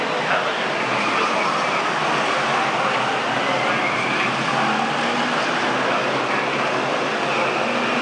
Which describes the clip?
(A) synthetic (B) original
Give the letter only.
B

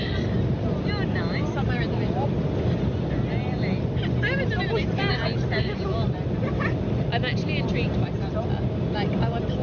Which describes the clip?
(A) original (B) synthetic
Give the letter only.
A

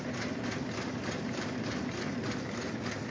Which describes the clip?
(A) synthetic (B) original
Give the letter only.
B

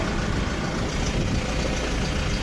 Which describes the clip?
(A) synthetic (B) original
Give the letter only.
B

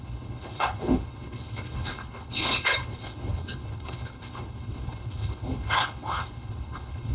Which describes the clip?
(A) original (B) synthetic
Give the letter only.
B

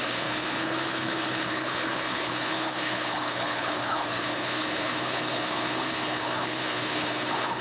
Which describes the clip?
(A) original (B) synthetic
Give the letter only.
B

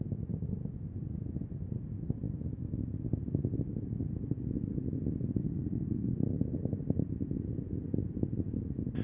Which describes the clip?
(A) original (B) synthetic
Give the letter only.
A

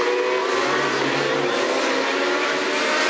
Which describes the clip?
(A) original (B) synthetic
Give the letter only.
A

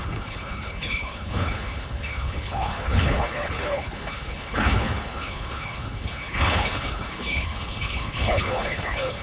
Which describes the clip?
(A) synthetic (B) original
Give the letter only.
A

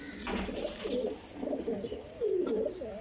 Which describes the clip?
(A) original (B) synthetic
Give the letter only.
A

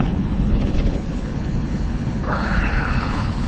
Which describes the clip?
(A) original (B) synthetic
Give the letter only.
B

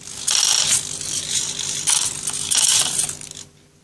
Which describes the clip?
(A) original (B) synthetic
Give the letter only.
A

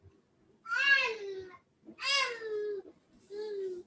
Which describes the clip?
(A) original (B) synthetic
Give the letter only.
A